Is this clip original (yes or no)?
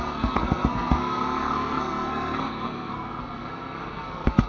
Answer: no